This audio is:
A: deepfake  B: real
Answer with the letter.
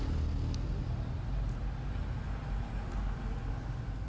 B